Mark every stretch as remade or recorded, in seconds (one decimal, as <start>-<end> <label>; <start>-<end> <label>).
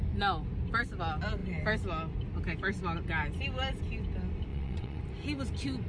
0.0-4.5 recorded; 4.5-5.0 remade; 5.0-5.9 recorded